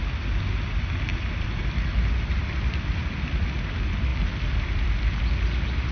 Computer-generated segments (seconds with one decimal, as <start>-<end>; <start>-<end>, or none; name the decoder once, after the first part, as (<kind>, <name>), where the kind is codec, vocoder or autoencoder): 1.1-2.1 (vocoder, BigVGAN v2); 4.1-5.2

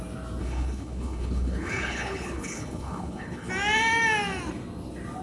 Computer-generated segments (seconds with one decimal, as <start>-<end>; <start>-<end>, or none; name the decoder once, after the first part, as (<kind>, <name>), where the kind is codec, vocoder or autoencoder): 0.4-3.5 (codec, HILCodec)

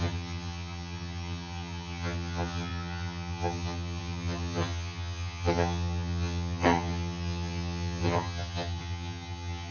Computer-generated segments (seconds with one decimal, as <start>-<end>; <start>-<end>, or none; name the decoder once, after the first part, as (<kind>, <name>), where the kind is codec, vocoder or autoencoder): 0.0-9.7 (vocoder, HiFi-GAN)

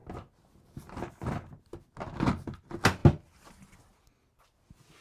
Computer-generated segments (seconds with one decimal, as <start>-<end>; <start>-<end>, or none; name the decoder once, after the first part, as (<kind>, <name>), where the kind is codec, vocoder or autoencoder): none